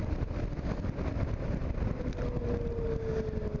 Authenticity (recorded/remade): recorded